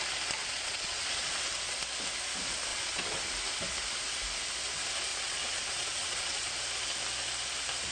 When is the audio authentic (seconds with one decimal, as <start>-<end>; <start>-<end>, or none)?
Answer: 0.0-0.4; 1.4-2.7; 3.2-5.1; 6.5-7.9